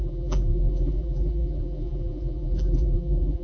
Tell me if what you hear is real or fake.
fake